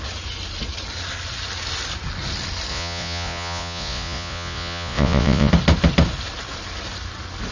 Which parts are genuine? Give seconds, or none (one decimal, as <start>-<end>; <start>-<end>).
0.0-2.7; 5.5-7.5